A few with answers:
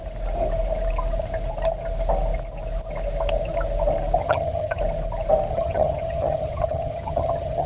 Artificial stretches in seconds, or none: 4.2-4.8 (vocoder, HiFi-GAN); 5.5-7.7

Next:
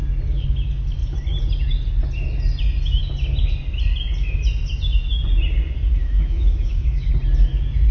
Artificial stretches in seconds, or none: 6.0-7.1 (autoencoder, DAC-VAE)

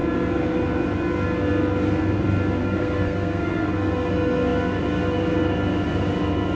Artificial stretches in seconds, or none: 2.6-4.1 (codec, SNAC)

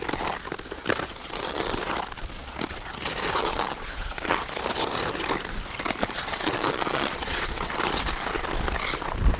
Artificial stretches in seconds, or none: 1.2-1.8 (vocoder, Vocos); 3.4-4.5; 6.0-7.7

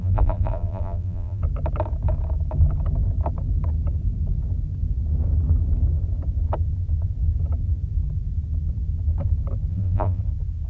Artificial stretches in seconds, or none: 0.0-1.4 (vocoder, BigVGAN v2); 9.7-10.2

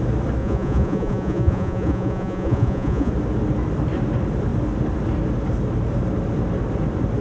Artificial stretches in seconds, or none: 0.4-3.1 (vocoder, Vocos)

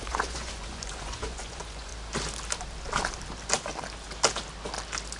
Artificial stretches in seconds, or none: 0.0-1.9 (vocoder, Vocos)